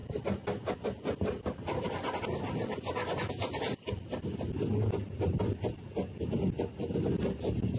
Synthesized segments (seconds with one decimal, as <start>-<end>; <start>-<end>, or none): none